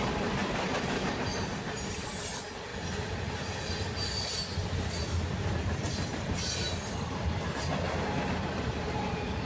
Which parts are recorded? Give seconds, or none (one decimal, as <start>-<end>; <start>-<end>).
0.0-0.4; 2.1-9.5

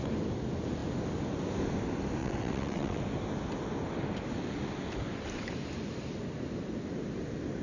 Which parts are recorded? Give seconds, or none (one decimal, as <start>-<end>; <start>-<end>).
0.0-2.2; 3.0-7.6

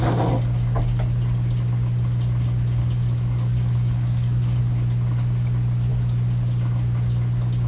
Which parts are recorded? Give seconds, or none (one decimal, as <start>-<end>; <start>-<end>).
0.0-2.8; 4.6-7.7

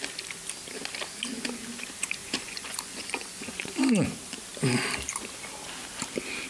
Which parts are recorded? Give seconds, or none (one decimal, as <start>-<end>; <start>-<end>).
0.0-2.2; 3.7-6.5

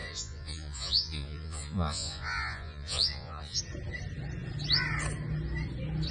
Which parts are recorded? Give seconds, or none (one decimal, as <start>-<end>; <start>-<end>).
3.6-6.1

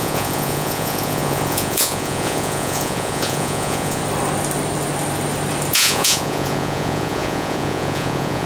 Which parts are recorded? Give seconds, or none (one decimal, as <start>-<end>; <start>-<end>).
4.0-5.7

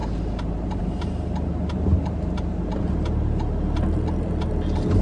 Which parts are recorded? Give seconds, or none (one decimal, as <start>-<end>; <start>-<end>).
0.0-5.0